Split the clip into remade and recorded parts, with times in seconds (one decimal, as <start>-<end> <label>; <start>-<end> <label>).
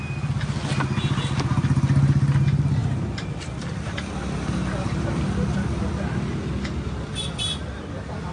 0.0-2.8 recorded; 2.8-5.8 remade; 5.8-7.1 recorded; 7.1-7.6 remade; 7.6-8.3 recorded